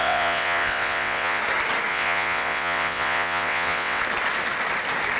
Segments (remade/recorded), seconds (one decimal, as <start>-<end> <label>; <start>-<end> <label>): 0.0-1.4 remade; 1.4-1.9 recorded; 1.9-4.0 remade; 4.0-5.2 recorded